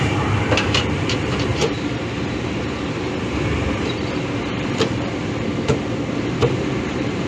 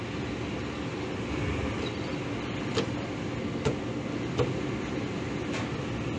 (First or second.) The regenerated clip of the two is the first